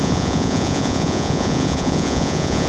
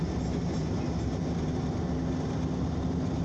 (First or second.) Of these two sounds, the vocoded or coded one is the first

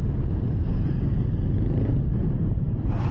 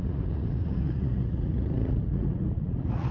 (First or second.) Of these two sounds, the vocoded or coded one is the second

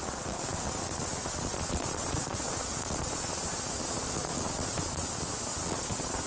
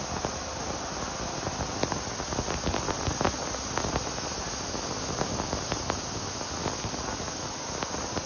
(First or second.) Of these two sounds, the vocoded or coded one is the first